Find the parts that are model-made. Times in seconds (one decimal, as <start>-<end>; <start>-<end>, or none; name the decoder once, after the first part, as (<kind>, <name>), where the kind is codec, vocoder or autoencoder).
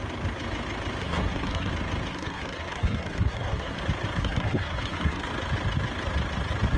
1.0-1.7 (codec, SNAC); 2.1-3.8; 4.2-5.3